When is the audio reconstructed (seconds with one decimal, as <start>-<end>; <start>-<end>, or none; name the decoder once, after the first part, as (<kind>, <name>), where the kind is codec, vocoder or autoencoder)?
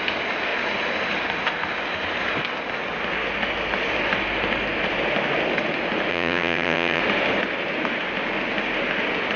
6.1-7.0 (vocoder, HiFi-GAN)